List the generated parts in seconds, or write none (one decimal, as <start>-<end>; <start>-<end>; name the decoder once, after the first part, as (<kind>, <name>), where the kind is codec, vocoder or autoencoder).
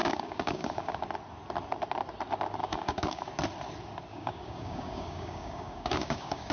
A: 0.0-1.0 (codec, DAC); 2.6-3.3; 4.1-6.5